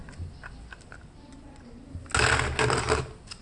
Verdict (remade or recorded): recorded